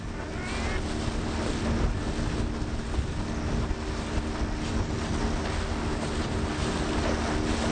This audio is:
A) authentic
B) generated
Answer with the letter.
A